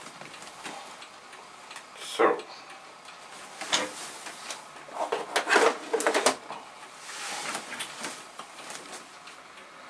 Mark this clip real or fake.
real